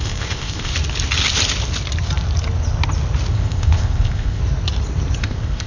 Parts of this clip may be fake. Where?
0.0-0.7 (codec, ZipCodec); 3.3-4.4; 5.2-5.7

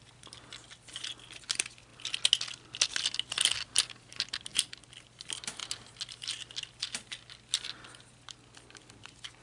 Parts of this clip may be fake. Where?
none